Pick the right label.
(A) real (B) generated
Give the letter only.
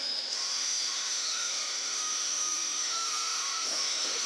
B